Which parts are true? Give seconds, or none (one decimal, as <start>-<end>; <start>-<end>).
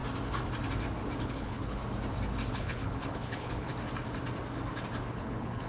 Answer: 0.0-1.2; 1.8-2.5; 3.7-5.1